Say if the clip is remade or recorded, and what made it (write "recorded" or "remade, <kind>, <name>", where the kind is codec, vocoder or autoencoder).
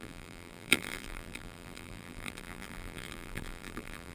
remade, vocoder, BigVGAN v2